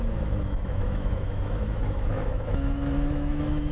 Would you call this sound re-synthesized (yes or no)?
yes